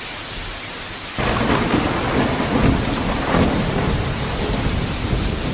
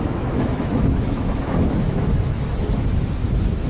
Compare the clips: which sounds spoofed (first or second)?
second